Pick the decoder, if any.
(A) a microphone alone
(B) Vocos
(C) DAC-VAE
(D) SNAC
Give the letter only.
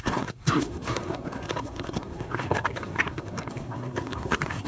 D